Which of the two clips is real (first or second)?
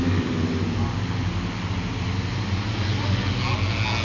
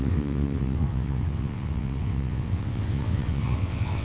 first